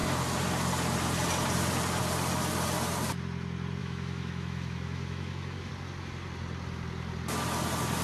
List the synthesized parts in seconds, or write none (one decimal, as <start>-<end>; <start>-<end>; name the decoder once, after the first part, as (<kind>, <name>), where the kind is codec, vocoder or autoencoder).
3.8-5.7 (autoencoder, DAC-VAE)